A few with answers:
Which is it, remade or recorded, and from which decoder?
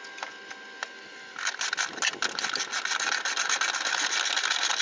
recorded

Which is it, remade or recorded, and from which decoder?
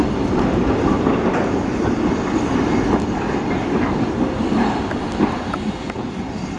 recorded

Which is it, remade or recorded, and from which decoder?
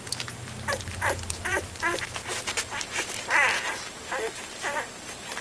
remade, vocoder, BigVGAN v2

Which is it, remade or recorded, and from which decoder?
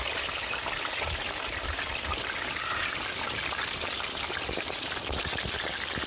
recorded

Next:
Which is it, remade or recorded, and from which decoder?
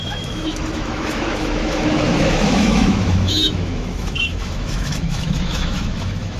remade, autoencoder, DAC-VAE